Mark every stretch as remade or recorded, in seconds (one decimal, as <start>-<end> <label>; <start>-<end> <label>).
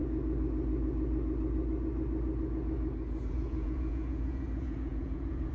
0.0-3.3 recorded; 3.3-5.5 remade